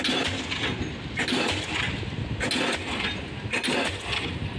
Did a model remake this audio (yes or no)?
no